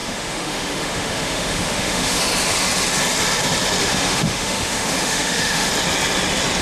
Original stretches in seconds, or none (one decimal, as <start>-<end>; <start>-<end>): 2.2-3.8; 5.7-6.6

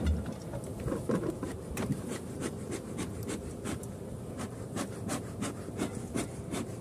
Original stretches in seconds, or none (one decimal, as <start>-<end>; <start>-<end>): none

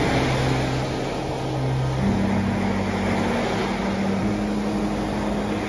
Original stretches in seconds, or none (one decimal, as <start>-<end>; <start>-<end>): 0.0-5.7

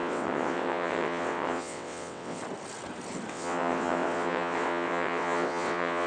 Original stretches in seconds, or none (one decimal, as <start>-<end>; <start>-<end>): 2.4-3.3

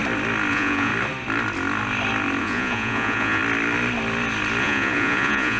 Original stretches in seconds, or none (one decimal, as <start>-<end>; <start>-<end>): 0.0-0.5; 0.9-2.4; 3.4-4.6